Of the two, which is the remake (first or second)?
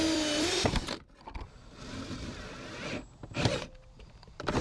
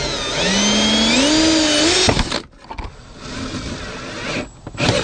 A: first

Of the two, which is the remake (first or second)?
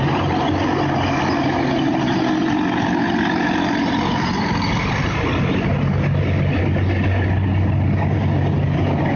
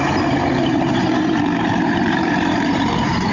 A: second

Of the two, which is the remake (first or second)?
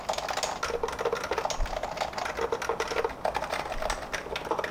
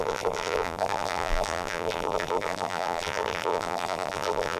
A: second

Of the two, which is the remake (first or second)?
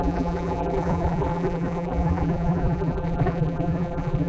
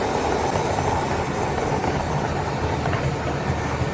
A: first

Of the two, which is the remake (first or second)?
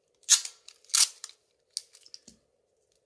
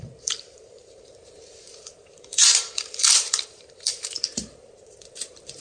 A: second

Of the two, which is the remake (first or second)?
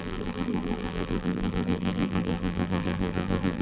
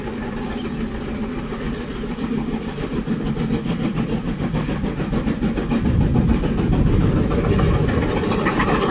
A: first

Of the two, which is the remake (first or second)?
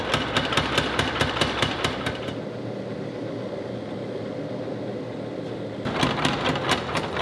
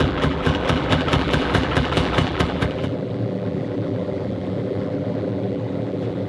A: second